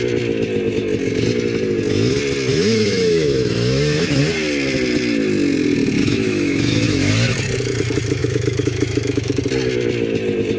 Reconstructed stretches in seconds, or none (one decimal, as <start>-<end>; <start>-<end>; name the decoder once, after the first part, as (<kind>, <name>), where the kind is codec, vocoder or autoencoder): 2.5-4.2 (autoencoder, DAC-VAE); 6.0-7.1; 8.2-9.4

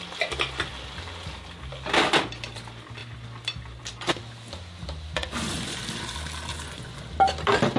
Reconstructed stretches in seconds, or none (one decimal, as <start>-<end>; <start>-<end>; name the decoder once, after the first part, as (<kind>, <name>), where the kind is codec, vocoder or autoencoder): 5.2-5.8 (vocoder, Vocos); 6.5-7.0